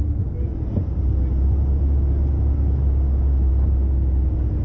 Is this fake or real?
real